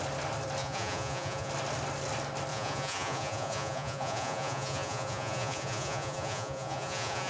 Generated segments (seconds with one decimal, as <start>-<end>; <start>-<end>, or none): 0.6-1.5; 2.5-7.3